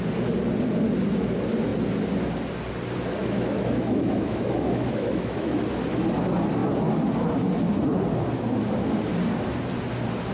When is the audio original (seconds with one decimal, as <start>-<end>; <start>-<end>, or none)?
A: 0.0-3.2; 5.6-10.3